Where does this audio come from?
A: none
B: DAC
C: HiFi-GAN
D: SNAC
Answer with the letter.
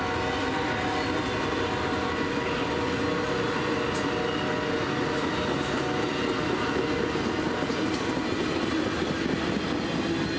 A